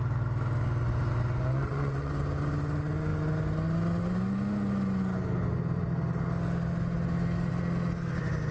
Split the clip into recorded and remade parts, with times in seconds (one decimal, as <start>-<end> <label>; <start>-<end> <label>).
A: 0.0-1.5 recorded; 1.5-2.1 remade; 2.1-8.5 recorded